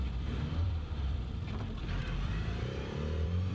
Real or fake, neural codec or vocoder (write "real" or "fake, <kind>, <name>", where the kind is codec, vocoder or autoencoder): fake, vocoder, BigVGAN v2